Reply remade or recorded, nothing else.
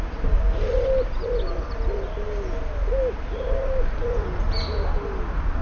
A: recorded